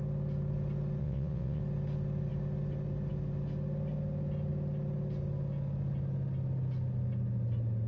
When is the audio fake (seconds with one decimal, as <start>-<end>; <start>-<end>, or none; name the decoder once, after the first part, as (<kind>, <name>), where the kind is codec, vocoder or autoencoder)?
1.0-1.6 (vocoder, WaveNeXt)